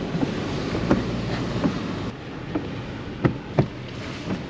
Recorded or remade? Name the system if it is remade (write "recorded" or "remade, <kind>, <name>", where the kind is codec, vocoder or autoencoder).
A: recorded